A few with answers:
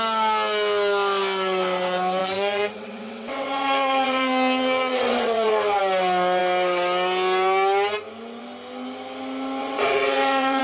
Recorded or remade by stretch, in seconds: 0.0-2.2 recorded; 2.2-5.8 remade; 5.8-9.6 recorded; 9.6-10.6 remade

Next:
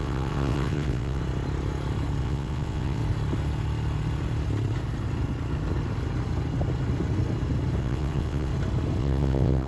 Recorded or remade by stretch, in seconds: 0.0-1.2 remade; 1.2-2.2 recorded; 2.2-3.0 remade; 3.0-7.8 recorded; 7.8-8.5 remade; 8.5-9.0 recorded; 9.0-9.7 remade

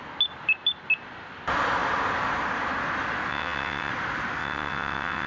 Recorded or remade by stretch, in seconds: 0.0-3.3 recorded; 3.3-3.9 remade; 3.9-4.4 recorded; 4.4-5.3 remade

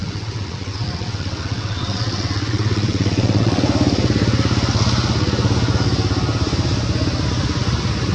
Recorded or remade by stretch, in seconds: 0.0-3.6 remade; 3.6-8.1 recorded

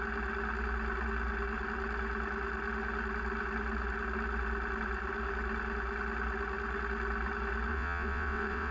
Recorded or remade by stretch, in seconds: 0.0-7.7 recorded; 7.7-8.7 remade

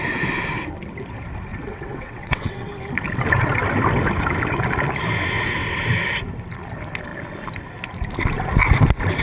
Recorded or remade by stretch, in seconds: 0.0-1.5 recorded; 1.5-2.7 remade; 2.7-9.2 recorded